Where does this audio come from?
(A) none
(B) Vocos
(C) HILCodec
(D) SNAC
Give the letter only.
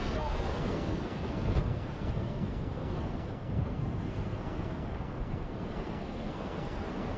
D